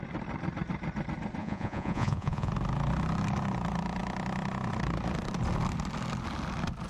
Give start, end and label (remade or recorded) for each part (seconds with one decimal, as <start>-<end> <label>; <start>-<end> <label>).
0.0-1.4 recorded; 1.4-2.5 remade; 2.5-6.9 recorded